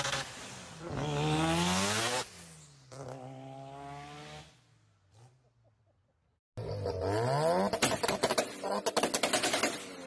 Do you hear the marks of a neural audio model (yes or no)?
no